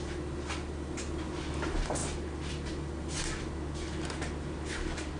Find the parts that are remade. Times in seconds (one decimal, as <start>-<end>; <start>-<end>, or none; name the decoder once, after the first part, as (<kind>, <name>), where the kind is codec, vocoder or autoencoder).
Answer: none